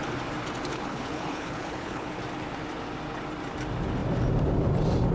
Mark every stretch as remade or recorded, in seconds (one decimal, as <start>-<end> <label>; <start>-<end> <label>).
0.0-0.7 recorded; 0.7-2.2 remade; 2.2-5.1 recorded